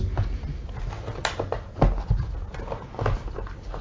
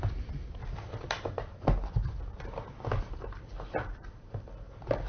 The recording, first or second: first